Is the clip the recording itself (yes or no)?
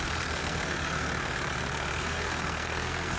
no